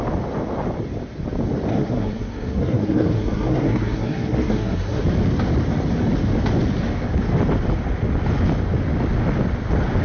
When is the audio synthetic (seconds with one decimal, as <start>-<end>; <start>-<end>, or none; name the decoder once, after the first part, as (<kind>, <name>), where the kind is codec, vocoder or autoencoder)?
1.7-5.0 (codec, SNAC)